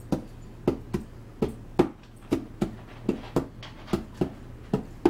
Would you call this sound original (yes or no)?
yes